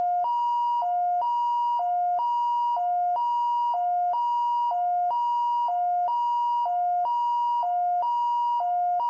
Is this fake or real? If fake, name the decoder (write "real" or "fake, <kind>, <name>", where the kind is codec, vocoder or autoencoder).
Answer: real